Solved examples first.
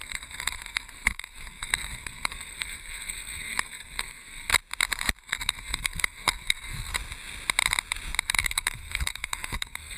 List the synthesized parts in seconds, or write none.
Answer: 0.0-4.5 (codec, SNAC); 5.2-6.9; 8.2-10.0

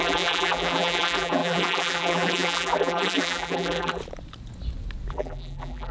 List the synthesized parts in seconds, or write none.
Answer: 0.0-4.0 (vocoder, BigVGAN v2); 5.1-5.9

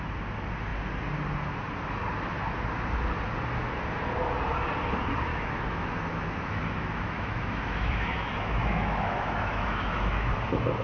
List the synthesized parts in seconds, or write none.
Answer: 5.3-10.3 (autoencoder, DAC-VAE)